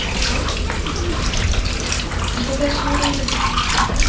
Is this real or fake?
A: real